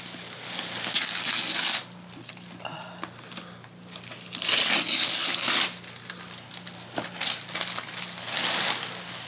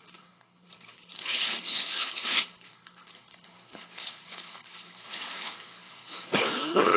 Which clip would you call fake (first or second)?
second